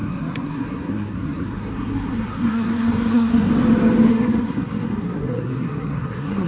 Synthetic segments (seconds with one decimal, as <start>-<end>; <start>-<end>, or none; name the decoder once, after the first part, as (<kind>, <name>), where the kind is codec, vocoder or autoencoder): 0.0-3.5 (codec, SNAC); 4.1-6.5